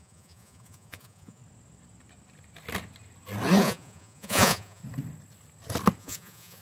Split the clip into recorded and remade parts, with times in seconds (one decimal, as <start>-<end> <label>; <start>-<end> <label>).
0.0-1.4 remade; 1.4-3.6 recorded; 3.6-4.8 remade; 4.8-6.0 recorded; 6.0-6.6 remade